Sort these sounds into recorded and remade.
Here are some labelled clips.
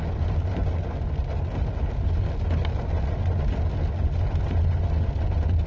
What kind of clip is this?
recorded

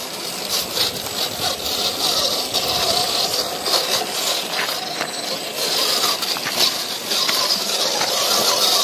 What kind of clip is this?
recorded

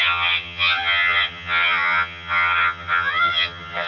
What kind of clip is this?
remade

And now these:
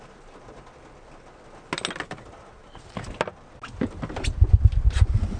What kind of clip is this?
recorded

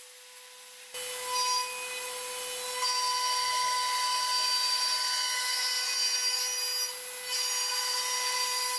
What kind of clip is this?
recorded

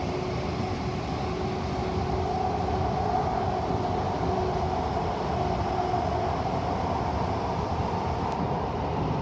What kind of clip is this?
recorded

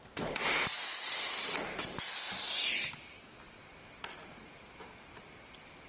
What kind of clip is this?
recorded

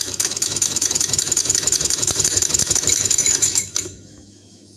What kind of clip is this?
remade